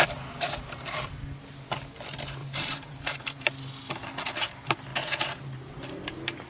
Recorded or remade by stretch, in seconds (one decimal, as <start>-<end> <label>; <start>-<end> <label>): 0.0-2.4 recorded; 2.4-3.5 remade; 3.5-4.9 recorded; 4.9-5.8 remade; 5.8-6.5 recorded